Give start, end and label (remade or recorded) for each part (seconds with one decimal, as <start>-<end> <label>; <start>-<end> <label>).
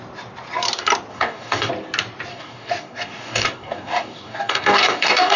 0.0-1.1 recorded; 1.1-1.7 remade; 1.7-2.3 recorded; 2.3-5.4 remade